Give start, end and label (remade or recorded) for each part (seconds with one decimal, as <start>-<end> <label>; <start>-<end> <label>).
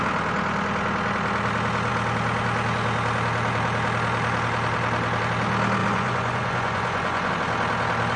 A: 0.0-5.8 recorded; 5.8-7.3 remade; 7.3-8.2 recorded